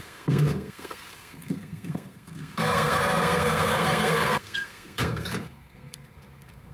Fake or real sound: fake